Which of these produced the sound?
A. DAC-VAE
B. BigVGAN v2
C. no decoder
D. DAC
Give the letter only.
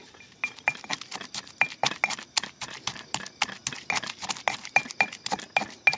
C